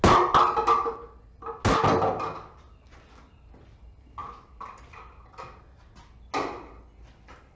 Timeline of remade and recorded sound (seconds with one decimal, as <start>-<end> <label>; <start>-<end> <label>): 0.0-7.6 recorded